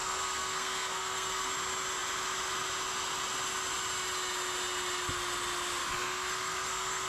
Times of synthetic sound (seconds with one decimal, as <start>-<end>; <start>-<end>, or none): 0.0-1.5; 5.8-7.1